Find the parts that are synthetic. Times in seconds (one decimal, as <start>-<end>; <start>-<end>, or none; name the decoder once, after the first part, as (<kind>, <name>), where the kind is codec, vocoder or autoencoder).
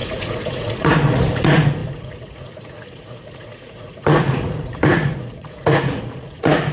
0.0-6.7 (vocoder, Vocos)